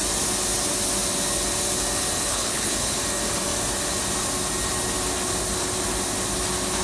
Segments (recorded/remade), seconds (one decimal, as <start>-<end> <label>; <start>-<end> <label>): 0.0-2.3 recorded; 2.3-3.0 remade; 3.0-6.8 recorded